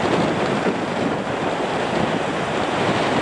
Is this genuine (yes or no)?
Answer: yes